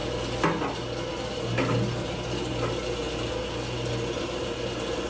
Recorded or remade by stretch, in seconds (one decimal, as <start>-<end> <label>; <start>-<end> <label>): 0.0-5.1 recorded